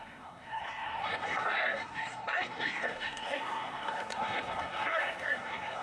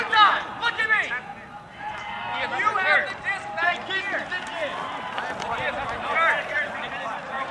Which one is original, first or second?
second